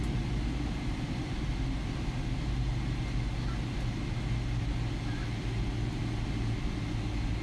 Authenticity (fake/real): real